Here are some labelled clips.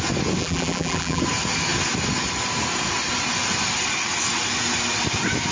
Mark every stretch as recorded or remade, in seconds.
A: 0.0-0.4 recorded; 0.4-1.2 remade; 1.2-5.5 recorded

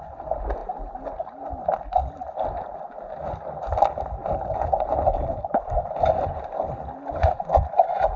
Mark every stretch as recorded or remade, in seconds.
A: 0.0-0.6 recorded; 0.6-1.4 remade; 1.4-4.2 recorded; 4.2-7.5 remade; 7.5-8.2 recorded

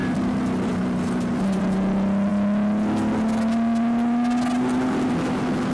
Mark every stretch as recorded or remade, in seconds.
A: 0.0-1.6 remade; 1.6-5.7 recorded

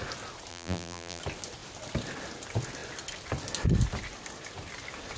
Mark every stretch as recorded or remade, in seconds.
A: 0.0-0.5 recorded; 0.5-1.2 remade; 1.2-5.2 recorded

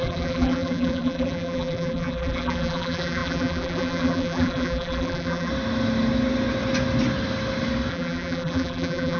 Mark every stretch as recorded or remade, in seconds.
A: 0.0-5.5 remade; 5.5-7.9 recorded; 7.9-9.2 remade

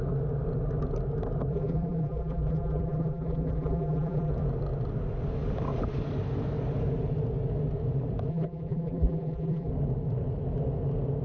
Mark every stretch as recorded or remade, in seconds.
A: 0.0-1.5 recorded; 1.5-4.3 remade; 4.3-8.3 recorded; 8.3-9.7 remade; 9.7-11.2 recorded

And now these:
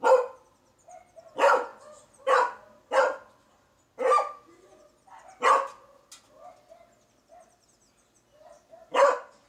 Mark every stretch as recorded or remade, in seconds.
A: 0.0-9.5 recorded

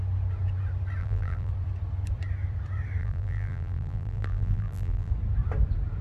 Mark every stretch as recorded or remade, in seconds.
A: 0.0-1.0 recorded; 1.0-1.5 remade; 1.5-3.0 recorded; 3.0-5.1 remade; 5.1-6.0 recorded